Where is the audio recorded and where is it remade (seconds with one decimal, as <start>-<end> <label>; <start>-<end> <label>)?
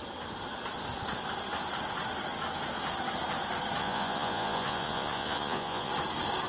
0.0-3.8 recorded; 3.8-5.9 remade; 5.9-6.5 recorded